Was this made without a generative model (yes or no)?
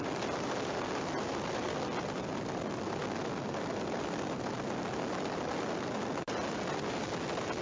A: yes